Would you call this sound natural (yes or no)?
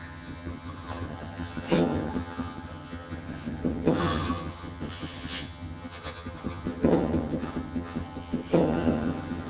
no